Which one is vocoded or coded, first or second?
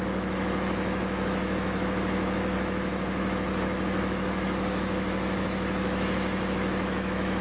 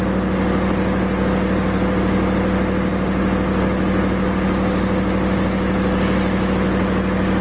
first